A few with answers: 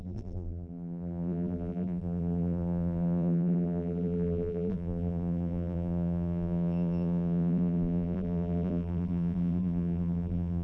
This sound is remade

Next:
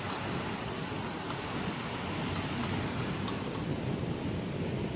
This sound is recorded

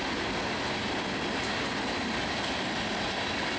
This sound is recorded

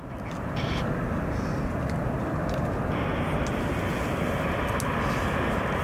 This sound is recorded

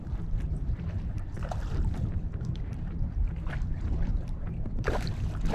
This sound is remade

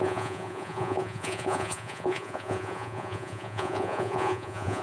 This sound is remade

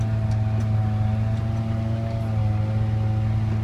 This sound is recorded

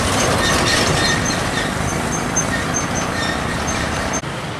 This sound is recorded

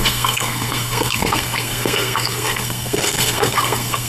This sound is remade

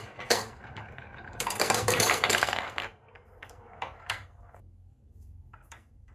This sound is remade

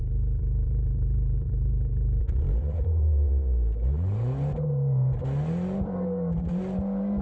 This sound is remade